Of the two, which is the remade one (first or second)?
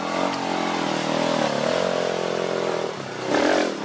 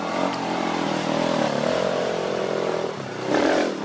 second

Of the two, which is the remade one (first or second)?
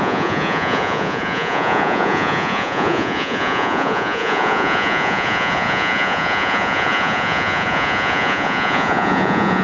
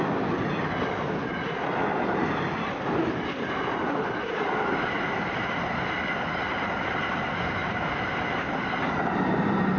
first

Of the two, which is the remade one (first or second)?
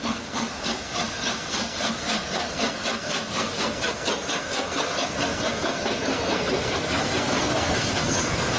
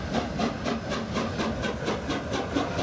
first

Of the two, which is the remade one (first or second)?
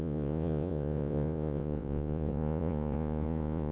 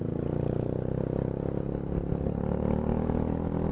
first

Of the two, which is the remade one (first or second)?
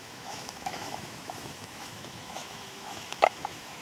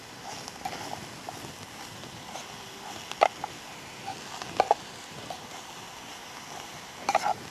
first